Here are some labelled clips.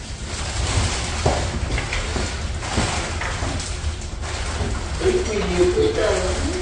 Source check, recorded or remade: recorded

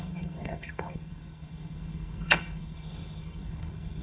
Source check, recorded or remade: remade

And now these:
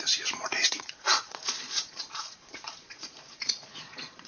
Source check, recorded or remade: remade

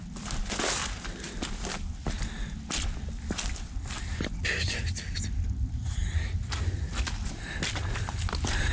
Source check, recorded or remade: recorded